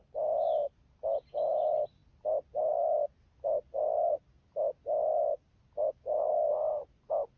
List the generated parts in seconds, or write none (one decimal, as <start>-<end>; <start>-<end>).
none